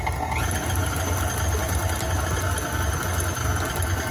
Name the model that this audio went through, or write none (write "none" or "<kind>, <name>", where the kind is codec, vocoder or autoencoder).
none